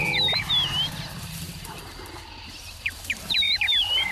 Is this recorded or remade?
remade